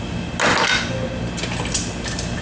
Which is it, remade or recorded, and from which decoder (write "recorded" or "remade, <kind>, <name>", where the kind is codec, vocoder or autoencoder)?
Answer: recorded